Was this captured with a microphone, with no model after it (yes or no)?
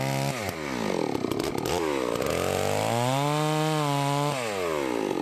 yes